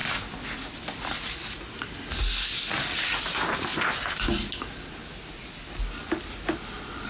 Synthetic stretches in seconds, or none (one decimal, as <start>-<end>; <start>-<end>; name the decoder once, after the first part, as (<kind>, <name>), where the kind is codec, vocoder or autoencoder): none